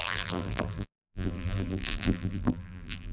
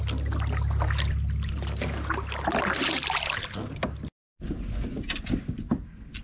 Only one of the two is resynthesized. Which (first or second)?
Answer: first